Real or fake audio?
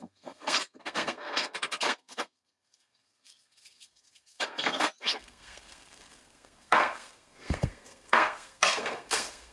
fake